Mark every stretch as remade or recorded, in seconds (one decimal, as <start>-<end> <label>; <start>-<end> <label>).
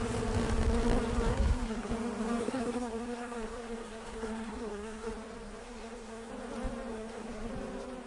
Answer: 0.0-1.3 recorded; 1.3-1.9 remade; 1.9-2.4 recorded; 2.4-5.1 remade; 5.1-5.6 recorded; 5.6-6.3 remade; 6.3-6.9 recorded; 6.9-7.5 remade; 7.5-8.1 recorded